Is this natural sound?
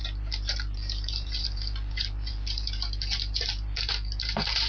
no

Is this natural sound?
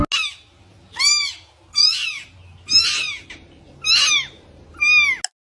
yes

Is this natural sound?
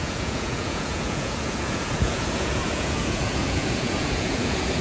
no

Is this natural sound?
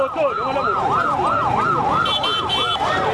yes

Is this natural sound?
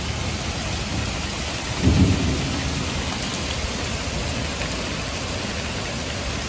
yes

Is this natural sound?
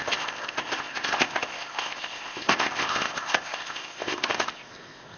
no